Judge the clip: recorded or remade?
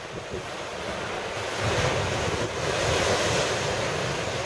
recorded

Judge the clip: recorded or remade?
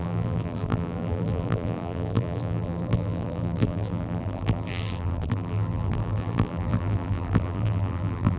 remade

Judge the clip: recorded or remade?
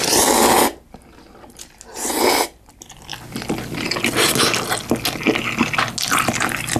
recorded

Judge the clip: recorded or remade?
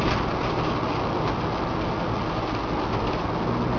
recorded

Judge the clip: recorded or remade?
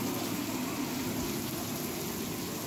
recorded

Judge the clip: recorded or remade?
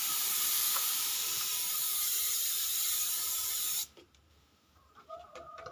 remade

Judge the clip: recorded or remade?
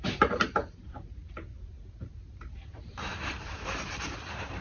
remade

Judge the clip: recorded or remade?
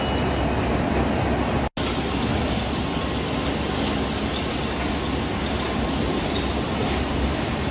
recorded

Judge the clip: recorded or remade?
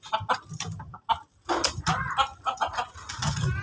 recorded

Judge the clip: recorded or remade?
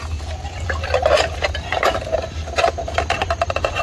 remade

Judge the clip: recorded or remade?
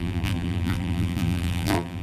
remade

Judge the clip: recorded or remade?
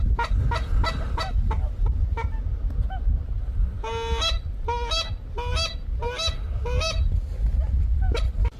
recorded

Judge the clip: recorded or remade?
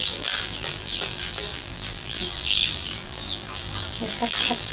remade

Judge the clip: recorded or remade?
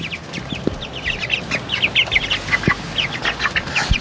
recorded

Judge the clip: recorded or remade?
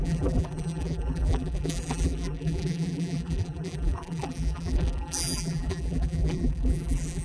remade